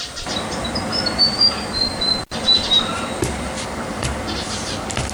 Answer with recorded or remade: remade